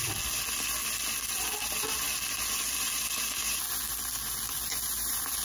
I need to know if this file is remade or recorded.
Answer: recorded